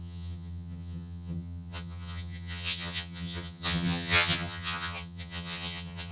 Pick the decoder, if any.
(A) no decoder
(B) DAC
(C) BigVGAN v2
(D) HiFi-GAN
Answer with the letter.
D